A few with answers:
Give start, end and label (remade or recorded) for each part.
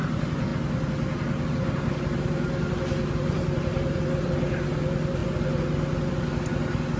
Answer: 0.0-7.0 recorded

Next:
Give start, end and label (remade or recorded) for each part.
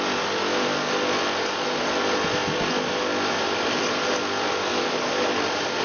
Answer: 0.0-5.8 recorded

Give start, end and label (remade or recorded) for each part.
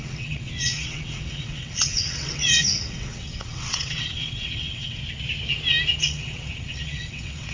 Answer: 0.0-5.0 remade; 5.0-6.0 recorded; 6.0-7.5 remade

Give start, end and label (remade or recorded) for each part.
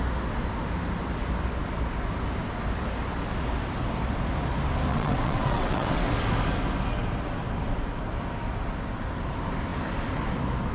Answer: 0.0-4.9 recorded; 4.9-6.1 remade; 6.1-10.7 recorded